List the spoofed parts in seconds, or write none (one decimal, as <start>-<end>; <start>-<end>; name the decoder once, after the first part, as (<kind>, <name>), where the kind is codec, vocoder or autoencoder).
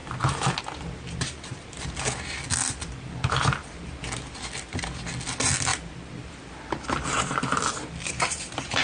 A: none